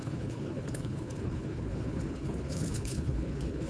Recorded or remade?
remade